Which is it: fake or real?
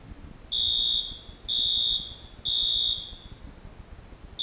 real